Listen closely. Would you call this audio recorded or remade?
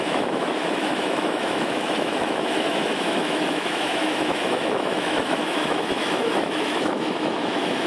remade